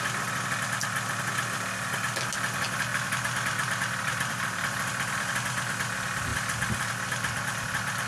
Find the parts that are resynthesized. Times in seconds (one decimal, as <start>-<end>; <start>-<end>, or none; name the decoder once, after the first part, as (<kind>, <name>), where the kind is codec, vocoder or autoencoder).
2.9-5.4 (vocoder, BigVGAN v2); 6.3-6.9